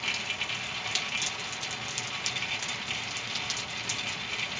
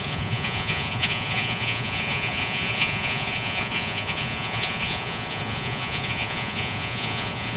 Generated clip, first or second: second